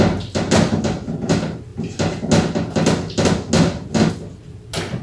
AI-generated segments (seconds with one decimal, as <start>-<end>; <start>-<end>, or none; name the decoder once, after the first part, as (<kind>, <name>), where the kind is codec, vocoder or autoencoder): none

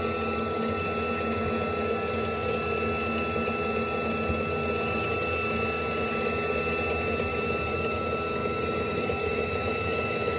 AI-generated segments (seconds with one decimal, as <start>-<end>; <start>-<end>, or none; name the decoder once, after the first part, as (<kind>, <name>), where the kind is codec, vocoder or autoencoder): 7.3-8.0 (vocoder, BigVGAN v2); 8.4-9.7

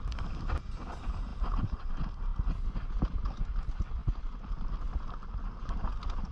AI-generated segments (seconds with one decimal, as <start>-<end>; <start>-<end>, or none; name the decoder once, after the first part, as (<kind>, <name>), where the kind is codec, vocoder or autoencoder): none

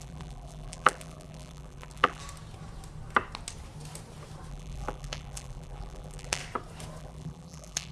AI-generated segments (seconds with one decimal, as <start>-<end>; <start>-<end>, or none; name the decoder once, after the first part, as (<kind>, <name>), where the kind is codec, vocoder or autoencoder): 0.0-2.2 (vocoder, BigVGAN v2); 4.5-6.4; 7.0-7.9

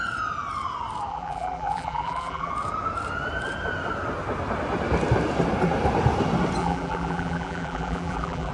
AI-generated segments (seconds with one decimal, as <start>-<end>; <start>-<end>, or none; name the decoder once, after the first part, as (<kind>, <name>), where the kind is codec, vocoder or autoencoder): 1.1-2.5 (vocoder, BigVGAN v2); 6.6-8.5